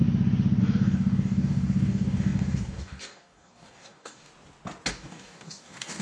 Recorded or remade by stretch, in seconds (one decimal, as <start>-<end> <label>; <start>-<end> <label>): 0.0-0.6 recorded; 0.6-4.3 remade; 4.3-4.9 recorded; 4.9-6.0 remade